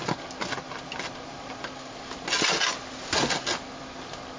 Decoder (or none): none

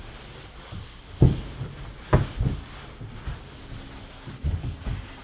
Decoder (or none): none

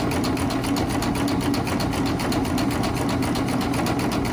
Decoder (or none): none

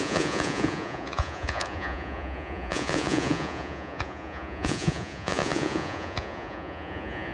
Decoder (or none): vocoder, Vocos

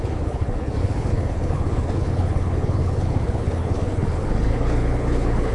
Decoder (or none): codec, HILCodec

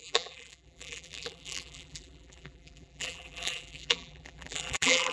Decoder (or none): vocoder, BigVGAN v2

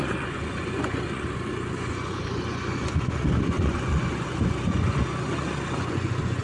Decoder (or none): vocoder, Vocos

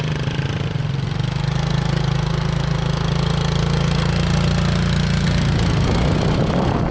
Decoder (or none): none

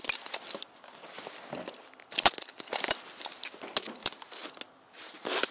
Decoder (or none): none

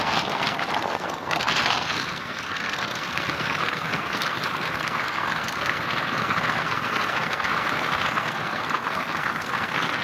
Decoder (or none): codec, SNAC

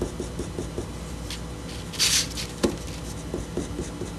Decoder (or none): none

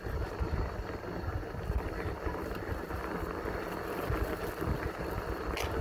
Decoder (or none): none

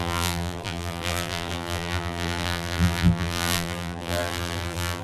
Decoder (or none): vocoder, BigVGAN v2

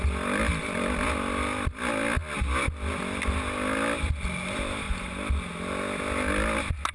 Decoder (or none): none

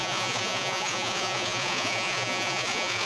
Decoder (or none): vocoder, Vocos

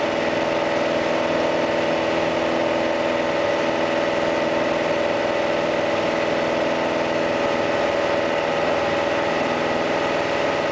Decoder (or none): none